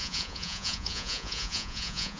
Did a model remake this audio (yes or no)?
yes